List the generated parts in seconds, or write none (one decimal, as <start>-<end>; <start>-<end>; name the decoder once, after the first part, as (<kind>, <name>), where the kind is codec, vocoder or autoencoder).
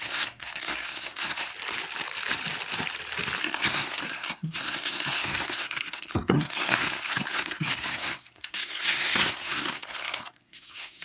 0.0-1.5 (codec, SNAC); 3.4-11.0